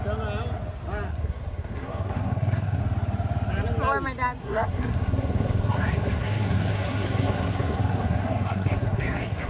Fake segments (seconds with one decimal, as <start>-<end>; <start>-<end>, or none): 1.1-2.8; 4.4-9.5